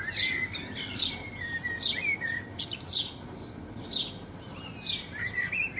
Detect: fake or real real